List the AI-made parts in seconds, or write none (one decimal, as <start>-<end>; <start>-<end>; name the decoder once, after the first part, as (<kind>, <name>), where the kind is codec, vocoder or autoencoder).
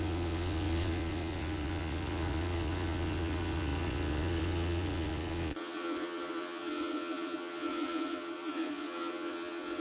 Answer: 0.0-9.8 (vocoder, Vocos)